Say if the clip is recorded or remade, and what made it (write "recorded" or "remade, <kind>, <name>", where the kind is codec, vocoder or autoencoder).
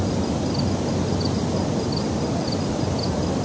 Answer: recorded